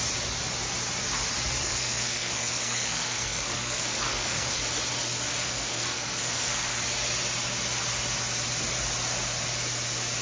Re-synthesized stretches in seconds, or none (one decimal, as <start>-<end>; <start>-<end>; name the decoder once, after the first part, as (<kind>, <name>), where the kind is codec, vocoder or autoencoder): 1.6-4.6 (codec, SNAC); 5.4-6.8